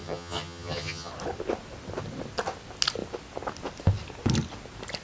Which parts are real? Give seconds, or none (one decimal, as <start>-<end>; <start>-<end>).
1.1-5.0